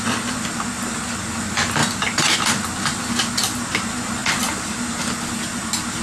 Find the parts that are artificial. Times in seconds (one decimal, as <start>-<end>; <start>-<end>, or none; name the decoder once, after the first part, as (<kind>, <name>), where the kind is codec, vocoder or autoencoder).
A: none